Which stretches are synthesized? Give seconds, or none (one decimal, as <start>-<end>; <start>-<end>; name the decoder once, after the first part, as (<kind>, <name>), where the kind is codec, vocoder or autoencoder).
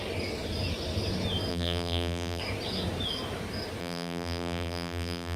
1.5-2.4 (vocoder, BigVGAN v2); 3.8-5.4